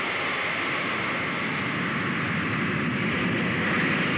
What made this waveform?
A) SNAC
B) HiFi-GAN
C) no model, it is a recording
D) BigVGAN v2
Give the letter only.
C